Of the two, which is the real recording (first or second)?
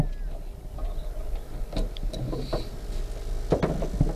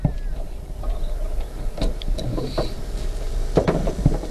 first